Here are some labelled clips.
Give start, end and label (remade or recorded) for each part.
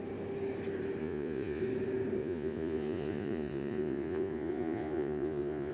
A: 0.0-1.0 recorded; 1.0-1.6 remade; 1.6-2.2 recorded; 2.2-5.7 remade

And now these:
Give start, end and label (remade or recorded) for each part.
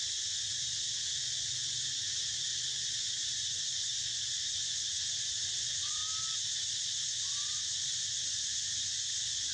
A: 0.0-0.7 remade; 0.7-1.2 recorded; 1.2-6.0 remade; 6.0-7.0 recorded; 7.0-9.5 remade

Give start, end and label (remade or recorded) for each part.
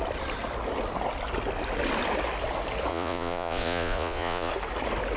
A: 0.0-2.9 recorded; 2.9-4.5 remade; 4.5-5.2 recorded